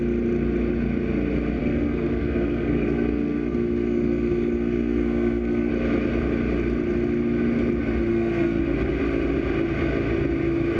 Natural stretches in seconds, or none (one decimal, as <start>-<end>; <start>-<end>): 0.0-1.6; 5.7-8.1; 8.6-10.8